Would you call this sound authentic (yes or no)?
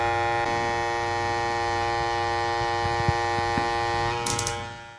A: yes